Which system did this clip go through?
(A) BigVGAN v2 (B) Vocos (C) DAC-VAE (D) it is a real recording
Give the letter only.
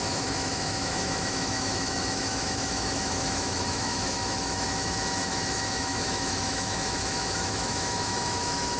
C